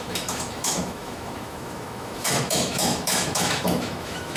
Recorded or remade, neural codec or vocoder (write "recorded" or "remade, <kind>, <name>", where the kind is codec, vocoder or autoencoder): remade, autoencoder, DAC-VAE